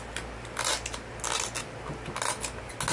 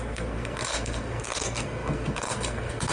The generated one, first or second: second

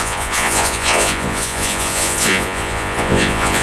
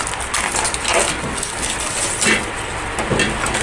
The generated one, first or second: first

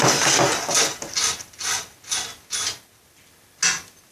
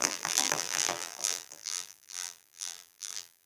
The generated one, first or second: second